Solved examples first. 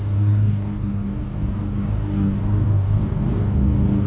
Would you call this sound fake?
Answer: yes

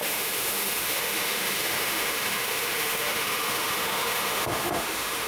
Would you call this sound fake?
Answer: yes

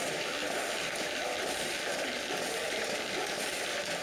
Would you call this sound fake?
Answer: no